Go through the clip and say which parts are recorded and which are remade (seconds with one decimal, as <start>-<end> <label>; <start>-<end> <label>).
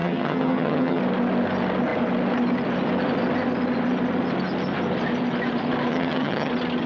0.0-1.0 remade; 1.0-5.9 recorded; 5.9-6.5 remade; 6.5-6.9 recorded